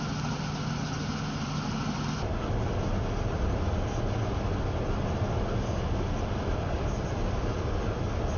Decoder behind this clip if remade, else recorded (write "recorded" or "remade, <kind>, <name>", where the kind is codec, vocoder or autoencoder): recorded